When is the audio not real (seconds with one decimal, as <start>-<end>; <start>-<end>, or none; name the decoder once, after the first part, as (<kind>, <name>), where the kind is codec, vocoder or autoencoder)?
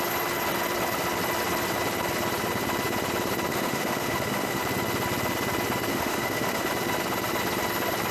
3.5-4.6 (autoencoder, DAC-VAE); 5.9-6.7